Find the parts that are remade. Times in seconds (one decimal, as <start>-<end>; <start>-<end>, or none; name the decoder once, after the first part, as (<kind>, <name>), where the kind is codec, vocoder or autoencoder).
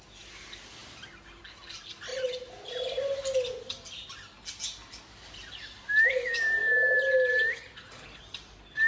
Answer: none